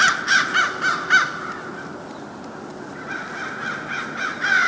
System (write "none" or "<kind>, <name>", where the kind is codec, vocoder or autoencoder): none